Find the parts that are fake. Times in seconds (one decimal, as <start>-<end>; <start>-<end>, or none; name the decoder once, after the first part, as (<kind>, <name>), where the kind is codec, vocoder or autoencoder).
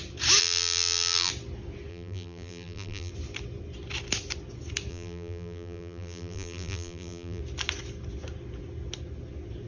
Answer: 0.4-1.3 (vocoder, BigVGAN v2); 1.9-3.1; 4.9-7.4